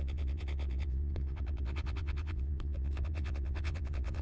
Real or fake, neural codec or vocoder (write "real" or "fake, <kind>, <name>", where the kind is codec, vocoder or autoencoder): fake, vocoder, Vocos